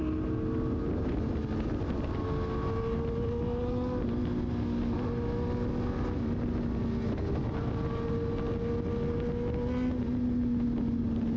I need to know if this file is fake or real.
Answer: real